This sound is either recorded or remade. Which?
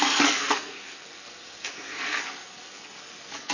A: remade